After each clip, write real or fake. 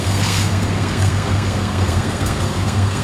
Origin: fake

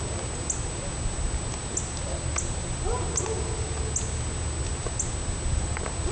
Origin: real